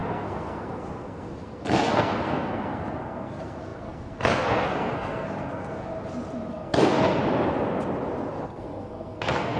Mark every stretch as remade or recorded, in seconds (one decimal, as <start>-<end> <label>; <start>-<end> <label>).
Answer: 0.0-5.9 remade; 5.9-6.5 recorded; 6.5-7.2 remade; 7.2-8.4 recorded; 8.4-9.6 remade